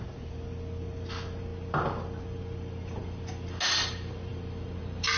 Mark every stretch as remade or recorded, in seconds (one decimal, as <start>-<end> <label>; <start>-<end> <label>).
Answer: 0.0-5.2 recorded